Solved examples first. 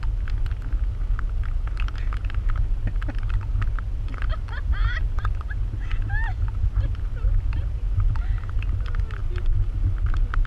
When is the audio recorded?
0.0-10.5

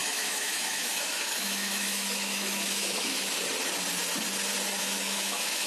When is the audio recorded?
3.3-4.8

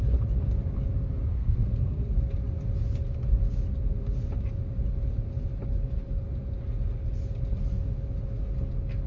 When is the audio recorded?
0.0-1.3; 2.2-9.1

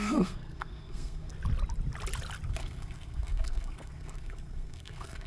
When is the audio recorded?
1.3-2.5

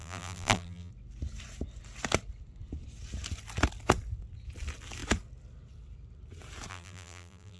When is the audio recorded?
0.9-6.7

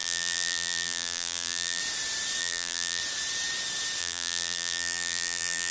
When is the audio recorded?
1.8-2.4; 3.0-4.0

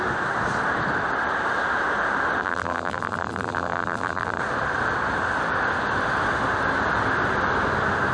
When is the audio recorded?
0.0-2.4; 4.4-8.1